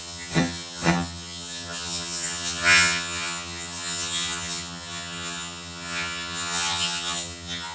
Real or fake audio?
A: fake